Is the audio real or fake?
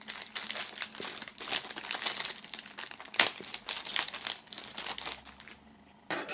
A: real